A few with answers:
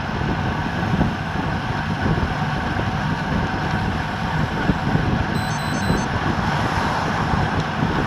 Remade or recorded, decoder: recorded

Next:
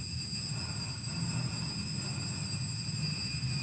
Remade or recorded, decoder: recorded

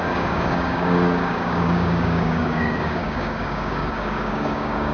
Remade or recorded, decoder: remade, codec, DAC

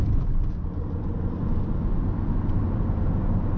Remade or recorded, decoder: recorded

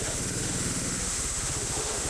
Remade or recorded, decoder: remade, autoencoder, DAC-VAE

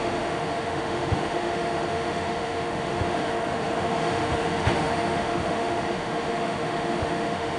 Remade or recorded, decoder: remade, autoencoder, DAC-VAE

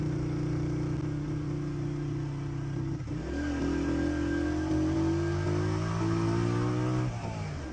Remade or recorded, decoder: recorded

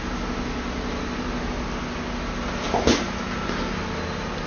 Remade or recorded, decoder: recorded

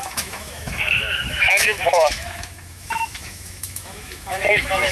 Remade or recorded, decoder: remade, autoencoder, DAC-VAE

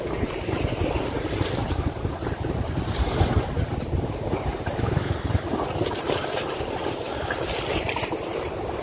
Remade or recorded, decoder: remade, vocoder, BigVGAN v2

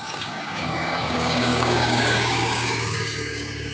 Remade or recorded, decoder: remade, codec, DAC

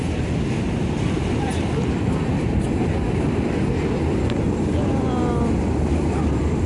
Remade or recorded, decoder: remade, vocoder, BigVGAN v2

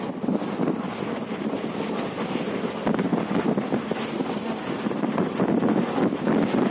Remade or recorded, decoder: recorded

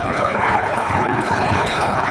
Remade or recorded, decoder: remade, codec, HILCodec